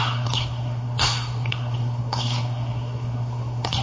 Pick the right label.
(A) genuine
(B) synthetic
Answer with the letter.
B